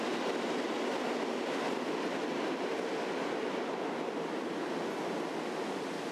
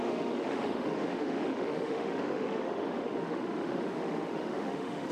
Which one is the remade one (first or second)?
second